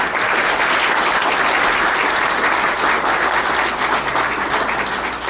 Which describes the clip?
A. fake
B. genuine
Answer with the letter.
B